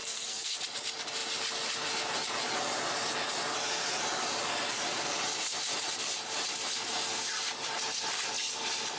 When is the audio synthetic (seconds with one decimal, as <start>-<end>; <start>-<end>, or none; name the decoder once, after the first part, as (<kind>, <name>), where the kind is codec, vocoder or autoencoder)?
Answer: 0.0-0.6 (codec, SNAC)